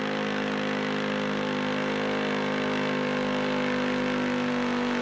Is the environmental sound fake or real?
real